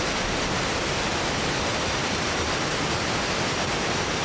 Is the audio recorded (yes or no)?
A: yes